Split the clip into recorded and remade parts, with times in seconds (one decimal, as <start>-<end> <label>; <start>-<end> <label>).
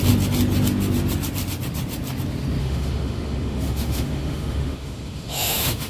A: 0.0-2.6 recorded; 2.6-5.9 remade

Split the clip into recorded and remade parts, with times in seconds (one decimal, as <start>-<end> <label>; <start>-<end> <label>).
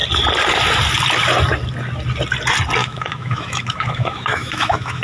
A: 0.0-2.8 recorded; 2.8-5.0 remade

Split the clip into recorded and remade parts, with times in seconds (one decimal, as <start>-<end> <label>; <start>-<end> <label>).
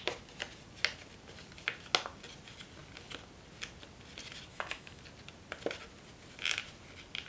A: 0.0-4.5 recorded; 4.5-5.0 remade; 5.0-7.3 recorded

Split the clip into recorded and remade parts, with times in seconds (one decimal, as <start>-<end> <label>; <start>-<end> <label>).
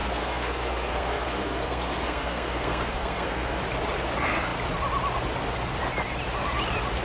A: 0.0-3.6 remade; 3.6-7.0 recorded